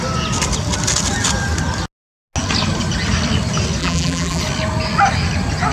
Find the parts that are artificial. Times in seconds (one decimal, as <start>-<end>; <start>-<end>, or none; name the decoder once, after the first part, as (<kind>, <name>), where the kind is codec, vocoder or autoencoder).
3.8-4.4 (vocoder, BigVGAN v2)